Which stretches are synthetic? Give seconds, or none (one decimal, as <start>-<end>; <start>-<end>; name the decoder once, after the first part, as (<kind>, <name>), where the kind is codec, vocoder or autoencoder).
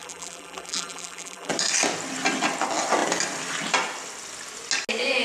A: 0.0-1.5 (vocoder, BigVGAN v2)